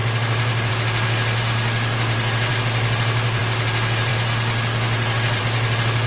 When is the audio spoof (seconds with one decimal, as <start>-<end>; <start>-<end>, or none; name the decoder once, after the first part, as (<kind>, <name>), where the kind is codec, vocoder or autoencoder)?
none